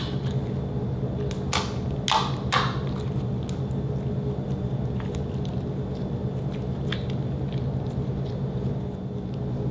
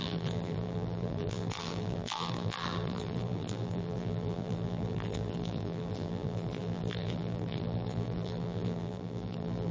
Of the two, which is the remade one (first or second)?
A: second